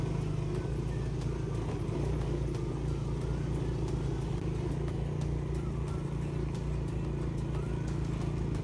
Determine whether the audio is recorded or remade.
recorded